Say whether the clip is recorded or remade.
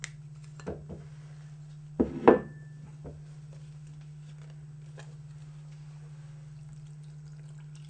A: recorded